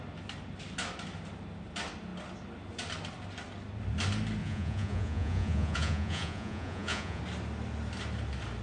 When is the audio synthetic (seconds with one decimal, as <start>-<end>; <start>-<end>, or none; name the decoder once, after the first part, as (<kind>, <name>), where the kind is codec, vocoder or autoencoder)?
4.4-7.2 (vocoder, Vocos)